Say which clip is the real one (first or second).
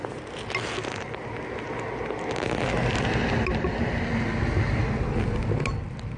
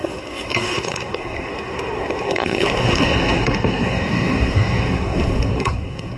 first